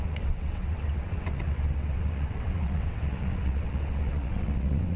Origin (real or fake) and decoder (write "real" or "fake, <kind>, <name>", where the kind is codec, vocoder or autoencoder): fake, vocoder, WaveNeXt